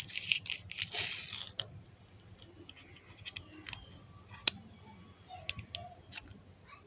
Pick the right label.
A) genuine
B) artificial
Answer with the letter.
A